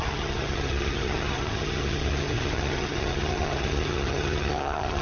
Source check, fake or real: fake